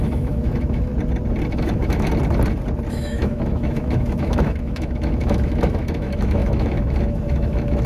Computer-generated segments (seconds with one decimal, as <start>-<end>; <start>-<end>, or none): 0.0-0.9; 1.5-2.1; 2.9-7.9